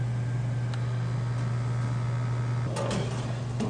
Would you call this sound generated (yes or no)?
no